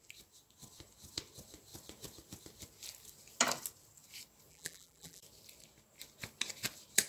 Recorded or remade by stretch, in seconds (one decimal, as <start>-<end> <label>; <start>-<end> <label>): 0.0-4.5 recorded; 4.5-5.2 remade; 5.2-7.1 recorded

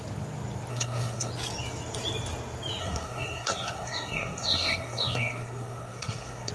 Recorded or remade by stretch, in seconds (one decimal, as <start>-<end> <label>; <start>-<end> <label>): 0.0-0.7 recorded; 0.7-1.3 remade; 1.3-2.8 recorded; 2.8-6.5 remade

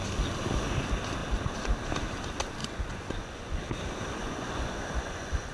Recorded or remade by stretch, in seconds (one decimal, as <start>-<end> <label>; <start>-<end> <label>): 0.0-2.6 recorded; 2.6-3.6 remade; 3.6-4.2 recorded; 4.2-5.5 remade

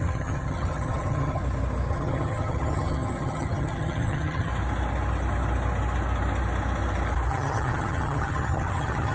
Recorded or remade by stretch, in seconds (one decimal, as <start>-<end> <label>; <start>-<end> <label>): 0.0-1.4 remade; 1.4-1.9 recorded; 1.9-4.5 remade; 4.5-7.3 recorded; 7.3-9.1 remade